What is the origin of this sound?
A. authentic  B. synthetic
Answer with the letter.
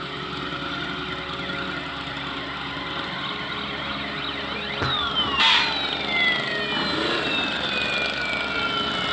A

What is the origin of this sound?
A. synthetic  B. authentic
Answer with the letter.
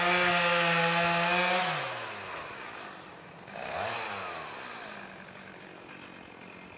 B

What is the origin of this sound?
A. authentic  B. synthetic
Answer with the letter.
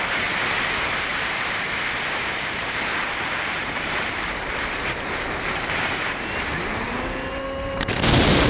B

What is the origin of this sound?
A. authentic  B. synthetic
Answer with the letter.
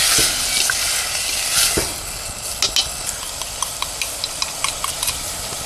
A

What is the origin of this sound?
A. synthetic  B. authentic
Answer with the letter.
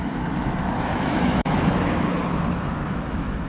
A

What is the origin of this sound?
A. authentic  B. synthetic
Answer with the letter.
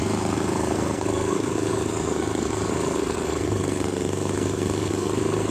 B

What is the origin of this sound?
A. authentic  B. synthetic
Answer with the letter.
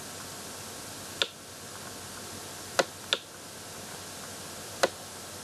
A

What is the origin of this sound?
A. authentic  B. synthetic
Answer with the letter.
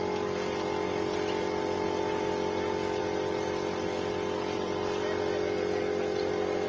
A